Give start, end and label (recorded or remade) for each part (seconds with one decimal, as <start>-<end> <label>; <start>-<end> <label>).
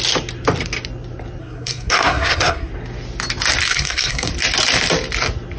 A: 0.0-1.4 recorded; 1.4-2.7 remade; 2.7-3.7 recorded; 3.7-4.3 remade; 4.3-5.6 recorded